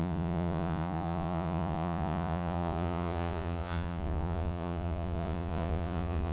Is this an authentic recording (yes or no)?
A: no